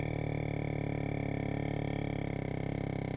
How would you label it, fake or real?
real